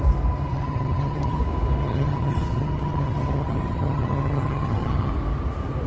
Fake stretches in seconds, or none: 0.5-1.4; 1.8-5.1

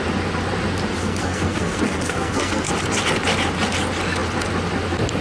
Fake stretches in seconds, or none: 1.0-2.7

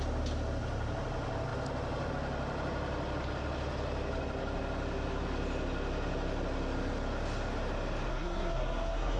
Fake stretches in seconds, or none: 8.1-9.2

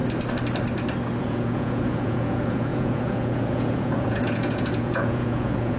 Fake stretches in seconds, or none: 1.2-5.8

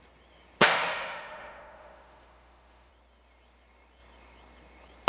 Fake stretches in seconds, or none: 0.6-2.9

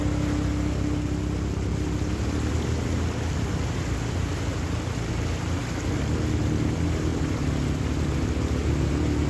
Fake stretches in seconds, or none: 7.1-8.7

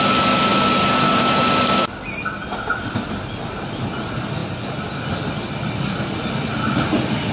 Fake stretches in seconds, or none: none

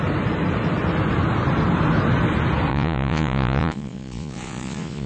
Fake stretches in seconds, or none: 2.7-5.1